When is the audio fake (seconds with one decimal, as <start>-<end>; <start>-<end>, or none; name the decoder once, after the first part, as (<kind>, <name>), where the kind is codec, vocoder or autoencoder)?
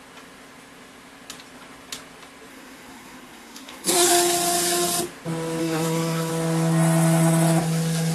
2.5-4.1 (codec, SNAC); 5.6-6.3